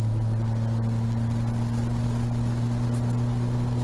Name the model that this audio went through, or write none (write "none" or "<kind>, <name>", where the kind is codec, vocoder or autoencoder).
none